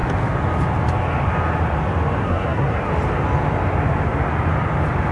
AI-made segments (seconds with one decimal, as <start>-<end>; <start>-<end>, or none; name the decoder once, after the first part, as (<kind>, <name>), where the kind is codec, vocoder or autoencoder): 2.2-2.9 (codec, SNAC)